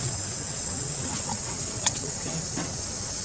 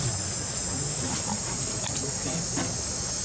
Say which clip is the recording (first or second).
second